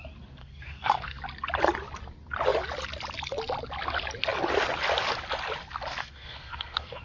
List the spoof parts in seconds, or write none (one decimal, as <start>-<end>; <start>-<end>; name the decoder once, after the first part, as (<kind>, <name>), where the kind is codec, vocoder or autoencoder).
0.4-1.2 (codec, SNAC); 6.0-7.0